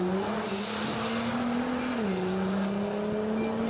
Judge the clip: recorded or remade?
recorded